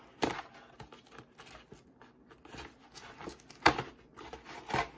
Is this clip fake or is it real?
real